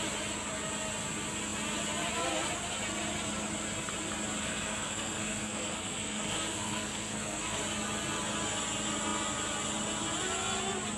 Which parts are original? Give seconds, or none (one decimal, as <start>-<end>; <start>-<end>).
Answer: 0.0-4.4; 7.6-11.0